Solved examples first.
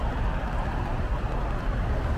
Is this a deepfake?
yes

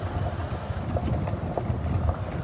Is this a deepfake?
no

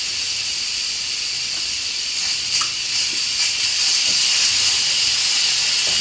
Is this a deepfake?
no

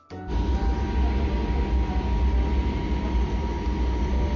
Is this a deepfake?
no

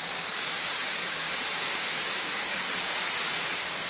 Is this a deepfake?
yes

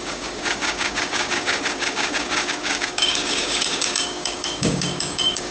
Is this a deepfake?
yes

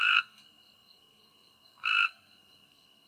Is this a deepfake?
yes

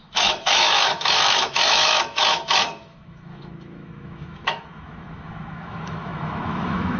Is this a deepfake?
yes